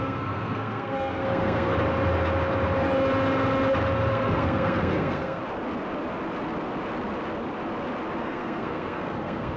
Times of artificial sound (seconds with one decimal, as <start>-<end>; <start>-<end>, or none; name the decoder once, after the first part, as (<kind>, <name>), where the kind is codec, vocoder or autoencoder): 0.0-1.7 (codec, SNAC); 4.1-5.4; 8.2-9.6